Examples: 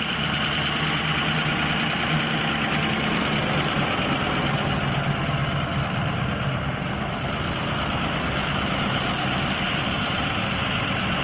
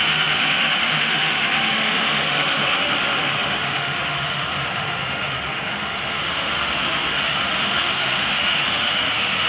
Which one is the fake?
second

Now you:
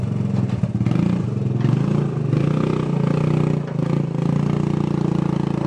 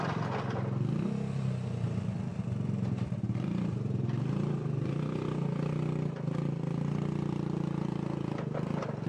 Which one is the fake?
second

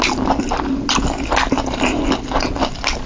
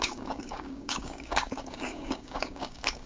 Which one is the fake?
second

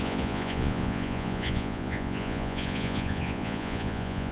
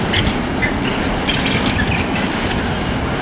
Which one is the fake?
first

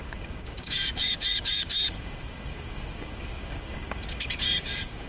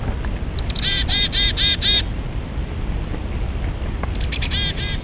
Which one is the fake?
first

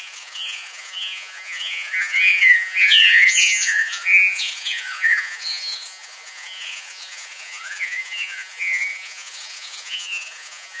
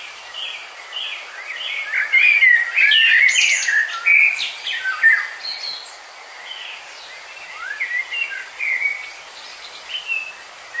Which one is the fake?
first